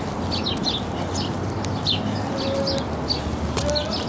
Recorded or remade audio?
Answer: recorded